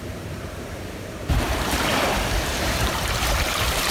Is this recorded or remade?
remade